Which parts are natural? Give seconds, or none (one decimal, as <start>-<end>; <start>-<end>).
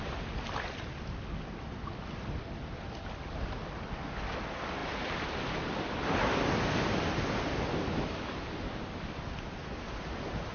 0.0-10.5